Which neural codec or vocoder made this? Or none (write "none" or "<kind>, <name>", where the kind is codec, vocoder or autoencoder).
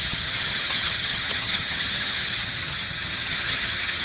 vocoder, HiFi-GAN